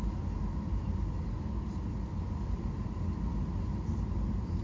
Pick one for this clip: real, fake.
real